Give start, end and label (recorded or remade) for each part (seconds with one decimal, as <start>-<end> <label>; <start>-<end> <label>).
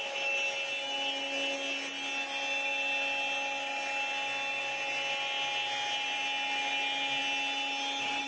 0.0-8.3 recorded